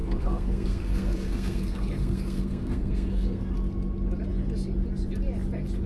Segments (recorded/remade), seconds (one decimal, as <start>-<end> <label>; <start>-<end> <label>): 0.0-3.5 remade; 3.5-5.9 recorded